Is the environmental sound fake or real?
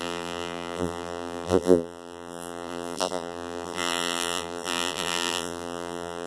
fake